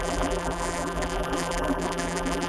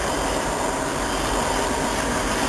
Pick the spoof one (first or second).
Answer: first